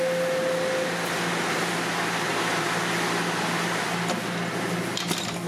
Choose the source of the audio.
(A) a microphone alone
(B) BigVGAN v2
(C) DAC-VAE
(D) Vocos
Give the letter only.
A